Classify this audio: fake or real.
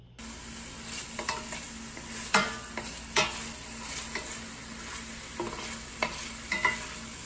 real